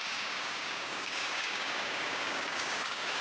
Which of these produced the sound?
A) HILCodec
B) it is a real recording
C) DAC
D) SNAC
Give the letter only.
C